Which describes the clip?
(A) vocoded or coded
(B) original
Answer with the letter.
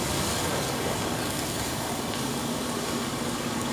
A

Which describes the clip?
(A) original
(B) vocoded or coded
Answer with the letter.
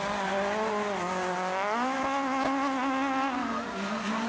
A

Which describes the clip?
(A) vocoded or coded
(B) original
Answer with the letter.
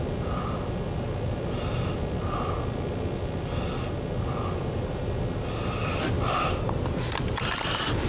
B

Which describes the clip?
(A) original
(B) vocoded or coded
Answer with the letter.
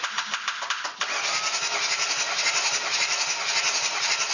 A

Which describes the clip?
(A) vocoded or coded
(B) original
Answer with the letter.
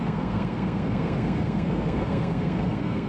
A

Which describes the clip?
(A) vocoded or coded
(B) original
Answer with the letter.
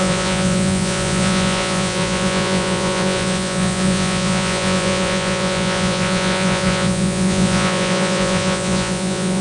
A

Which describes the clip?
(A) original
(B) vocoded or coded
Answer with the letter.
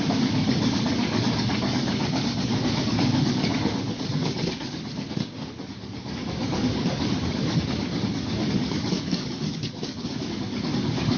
B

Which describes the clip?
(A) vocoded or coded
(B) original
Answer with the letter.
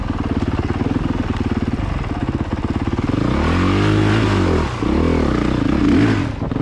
B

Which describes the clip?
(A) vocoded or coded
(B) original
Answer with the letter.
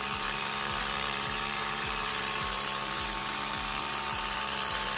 A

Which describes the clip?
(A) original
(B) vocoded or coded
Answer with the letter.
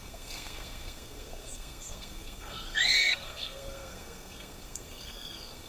B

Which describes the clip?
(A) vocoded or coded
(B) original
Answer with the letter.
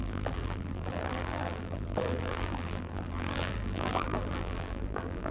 A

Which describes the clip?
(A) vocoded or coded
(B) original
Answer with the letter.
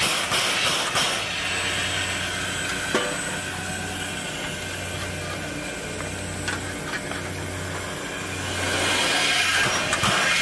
B